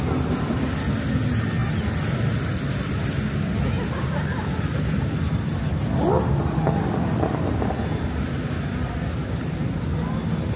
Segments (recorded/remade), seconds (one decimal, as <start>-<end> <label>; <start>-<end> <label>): 0.0-10.6 recorded